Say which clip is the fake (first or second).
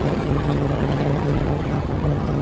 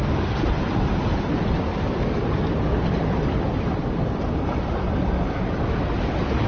first